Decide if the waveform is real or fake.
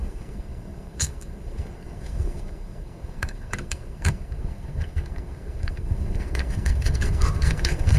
fake